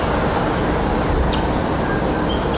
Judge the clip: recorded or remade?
recorded